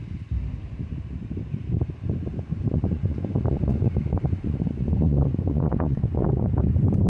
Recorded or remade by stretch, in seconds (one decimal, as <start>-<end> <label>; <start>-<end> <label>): 0.0-2.3 recorded; 2.3-6.6 remade; 6.6-7.1 recorded